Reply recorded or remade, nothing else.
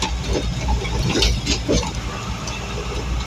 recorded